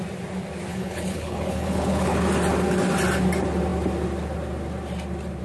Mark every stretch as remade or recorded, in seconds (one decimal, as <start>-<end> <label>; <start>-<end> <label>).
0.0-0.7 recorded; 0.7-2.2 remade; 2.2-5.4 recorded